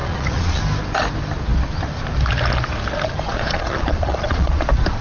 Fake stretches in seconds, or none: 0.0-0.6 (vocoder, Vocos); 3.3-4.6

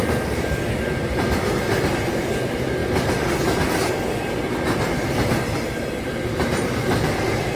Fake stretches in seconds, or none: none

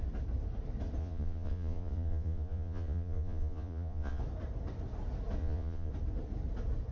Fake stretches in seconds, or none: 1.0-4.2 (vocoder, Vocos); 5.4-5.9

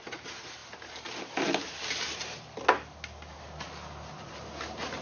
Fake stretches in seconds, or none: none

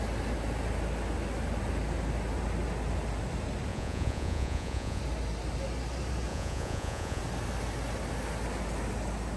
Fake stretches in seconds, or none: 3.7-5.0 (vocoder, Vocos); 6.3-7.2

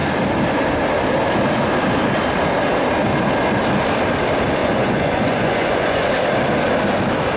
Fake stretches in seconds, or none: 4.6-6.1 (vocoder, Vocos)

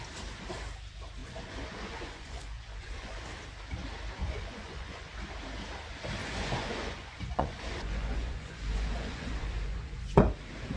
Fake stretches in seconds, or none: 1.2-3.3 (vocoder, Vocos); 4.2-5.1; 6.2-10.2